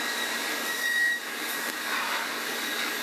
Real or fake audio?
fake